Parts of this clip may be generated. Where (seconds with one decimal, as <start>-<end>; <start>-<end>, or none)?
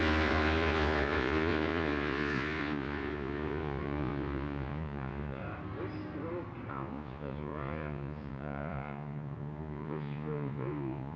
0.0-5.4; 6.7-11.2